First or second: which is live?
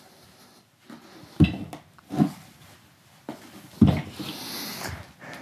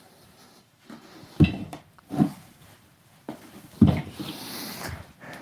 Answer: first